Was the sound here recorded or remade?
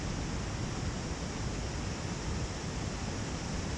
recorded